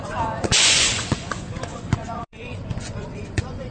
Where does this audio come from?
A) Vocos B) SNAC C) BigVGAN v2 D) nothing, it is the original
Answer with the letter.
A